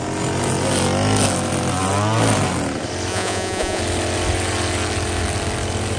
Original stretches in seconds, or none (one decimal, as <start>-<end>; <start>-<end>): 0.0-3.1; 3.8-6.0